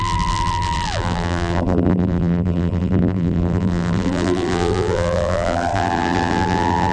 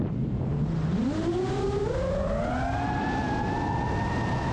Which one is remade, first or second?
first